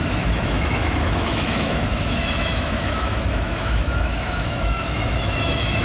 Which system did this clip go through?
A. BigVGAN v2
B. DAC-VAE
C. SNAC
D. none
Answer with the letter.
B